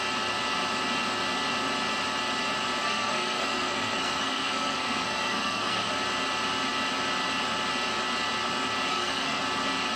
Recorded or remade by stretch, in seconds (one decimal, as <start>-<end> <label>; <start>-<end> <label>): 0.0-2.8 recorded; 2.8-5.9 remade; 5.9-8.9 recorded; 8.9-9.4 remade; 9.4-10.0 recorded